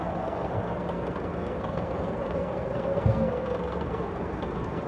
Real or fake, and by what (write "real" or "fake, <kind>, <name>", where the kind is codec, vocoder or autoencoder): fake, codec, SNAC